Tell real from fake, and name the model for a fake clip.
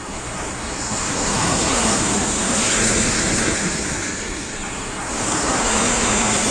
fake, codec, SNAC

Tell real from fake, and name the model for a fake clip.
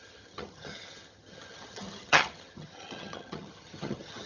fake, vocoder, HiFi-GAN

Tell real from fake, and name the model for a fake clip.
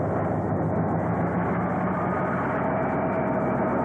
real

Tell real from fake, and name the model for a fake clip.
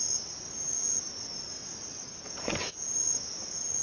real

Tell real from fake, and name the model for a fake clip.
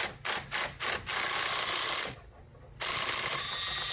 real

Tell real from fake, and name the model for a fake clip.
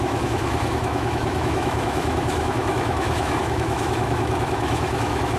fake, autoencoder, DAC-VAE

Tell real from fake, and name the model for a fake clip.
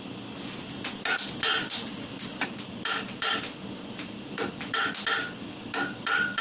real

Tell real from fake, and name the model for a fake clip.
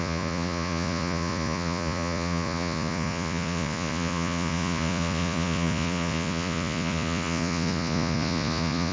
fake, vocoder, Vocos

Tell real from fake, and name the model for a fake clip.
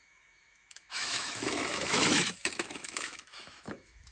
fake, autoencoder, DAC-VAE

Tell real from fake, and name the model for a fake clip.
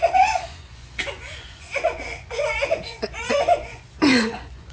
fake, vocoder, Vocos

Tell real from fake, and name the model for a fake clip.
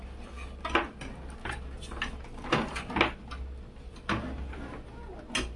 real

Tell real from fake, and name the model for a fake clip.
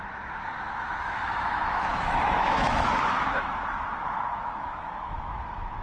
fake, autoencoder, DAC-VAE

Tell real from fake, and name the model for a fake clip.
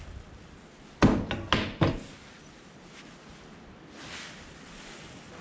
real